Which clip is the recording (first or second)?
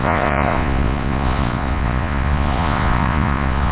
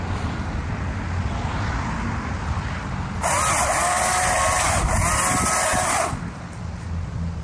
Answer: second